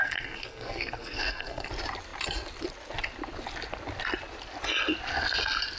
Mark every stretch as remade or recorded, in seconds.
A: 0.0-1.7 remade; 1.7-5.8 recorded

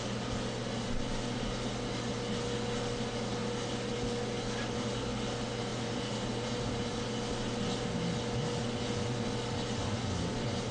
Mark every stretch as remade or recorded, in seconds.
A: 0.0-5.7 recorded; 5.7-7.0 remade; 7.0-10.7 recorded

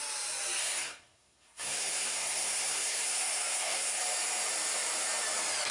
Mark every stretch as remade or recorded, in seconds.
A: 0.0-0.6 recorded; 0.6-4.0 remade; 4.0-5.7 recorded